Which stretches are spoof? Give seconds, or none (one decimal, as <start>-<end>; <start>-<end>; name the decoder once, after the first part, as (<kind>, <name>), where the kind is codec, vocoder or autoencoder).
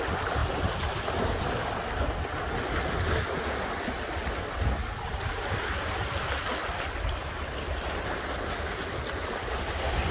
none